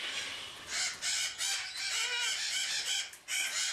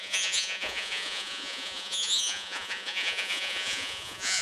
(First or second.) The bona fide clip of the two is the first